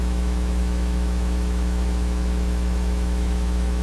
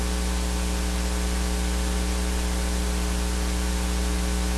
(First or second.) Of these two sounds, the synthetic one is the first